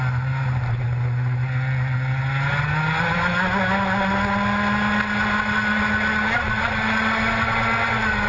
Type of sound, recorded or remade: recorded